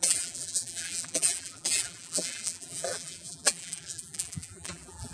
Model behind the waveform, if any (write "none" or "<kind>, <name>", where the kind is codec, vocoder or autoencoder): vocoder, BigVGAN v2